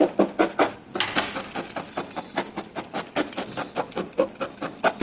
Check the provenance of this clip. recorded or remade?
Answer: recorded